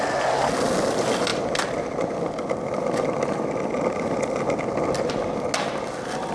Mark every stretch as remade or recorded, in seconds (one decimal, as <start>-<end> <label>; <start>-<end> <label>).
0.0-6.3 recorded